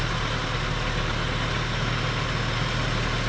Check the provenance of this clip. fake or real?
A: real